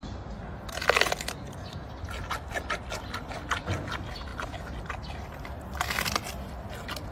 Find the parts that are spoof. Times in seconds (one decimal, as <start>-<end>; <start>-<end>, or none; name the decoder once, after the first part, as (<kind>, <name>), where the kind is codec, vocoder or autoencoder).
none